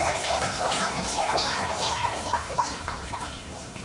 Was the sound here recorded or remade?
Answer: remade